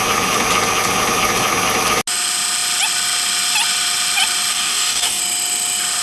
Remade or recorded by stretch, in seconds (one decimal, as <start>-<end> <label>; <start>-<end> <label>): 0.0-4.5 recorded; 4.5-5.2 remade; 5.2-6.0 recorded